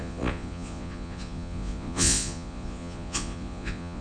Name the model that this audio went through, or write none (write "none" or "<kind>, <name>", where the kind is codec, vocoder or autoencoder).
vocoder, Vocos